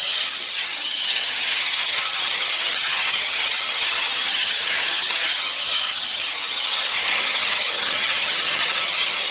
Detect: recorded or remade remade